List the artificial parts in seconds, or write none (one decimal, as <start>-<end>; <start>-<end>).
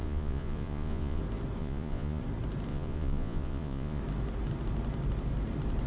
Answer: 0.0-1.2; 1.6-2.2; 2.7-4.0